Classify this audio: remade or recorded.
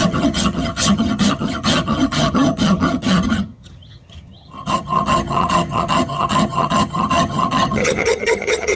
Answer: remade